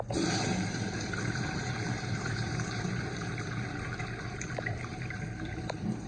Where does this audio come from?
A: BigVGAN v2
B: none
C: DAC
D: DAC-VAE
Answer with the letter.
A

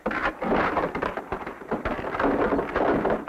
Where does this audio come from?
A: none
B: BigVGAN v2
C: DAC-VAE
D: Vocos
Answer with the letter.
A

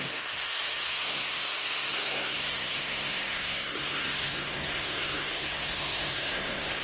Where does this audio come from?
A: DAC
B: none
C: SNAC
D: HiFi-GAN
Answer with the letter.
C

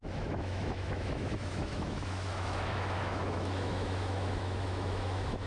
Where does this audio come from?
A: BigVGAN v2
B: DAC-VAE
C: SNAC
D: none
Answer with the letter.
B